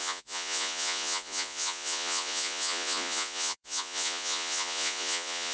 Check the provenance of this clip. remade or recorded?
remade